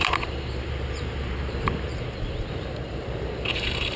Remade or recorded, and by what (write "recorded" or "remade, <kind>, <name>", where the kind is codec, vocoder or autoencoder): remade, vocoder, BigVGAN v2